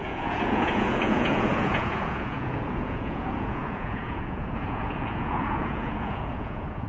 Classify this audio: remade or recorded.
remade